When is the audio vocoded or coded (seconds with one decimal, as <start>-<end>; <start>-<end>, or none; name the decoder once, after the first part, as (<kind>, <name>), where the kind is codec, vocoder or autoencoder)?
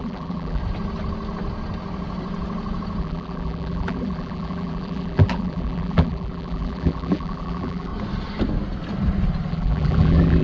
0.0-0.6 (vocoder, BigVGAN v2); 3.0-7.9; 9.5-10.4